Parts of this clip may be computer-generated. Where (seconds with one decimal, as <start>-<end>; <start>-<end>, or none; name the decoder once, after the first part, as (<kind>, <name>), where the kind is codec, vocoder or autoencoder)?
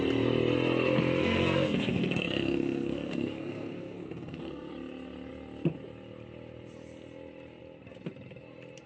1.2-4.7 (codec, SNAC)